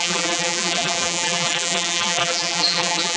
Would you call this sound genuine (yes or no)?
no